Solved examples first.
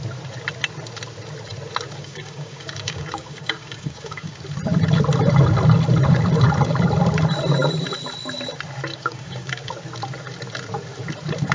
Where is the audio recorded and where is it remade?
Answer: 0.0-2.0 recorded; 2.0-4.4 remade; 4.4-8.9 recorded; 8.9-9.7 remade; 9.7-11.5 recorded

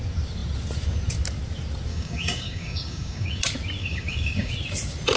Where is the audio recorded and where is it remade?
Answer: 0.0-1.9 recorded; 1.9-3.4 remade; 3.4-3.8 recorded; 3.8-4.5 remade; 4.5-5.2 recorded

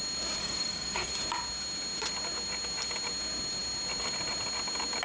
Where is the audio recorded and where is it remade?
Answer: 0.0-0.4 recorded; 0.4-1.1 remade; 1.1-5.0 recorded

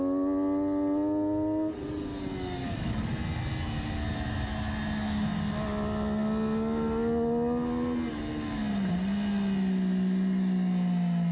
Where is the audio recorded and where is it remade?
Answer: 0.0-2.6 recorded; 2.6-3.1 remade; 3.1-11.3 recorded